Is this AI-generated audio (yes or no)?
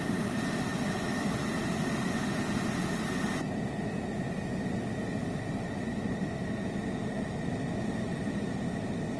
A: no